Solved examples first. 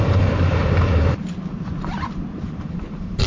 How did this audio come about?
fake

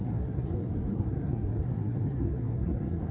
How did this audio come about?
fake